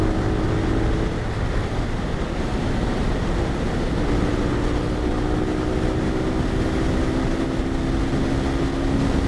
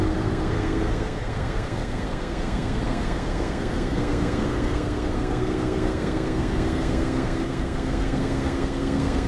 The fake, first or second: second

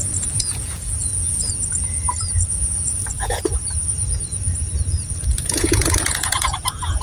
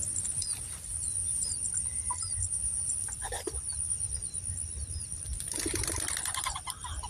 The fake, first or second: first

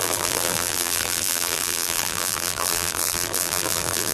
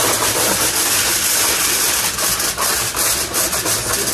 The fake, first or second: first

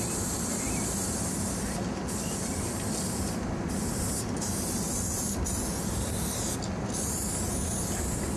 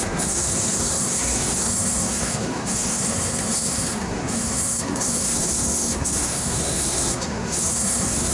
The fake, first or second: second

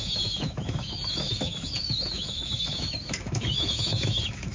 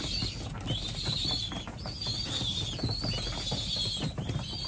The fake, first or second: first